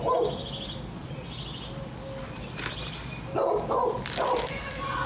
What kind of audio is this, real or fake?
real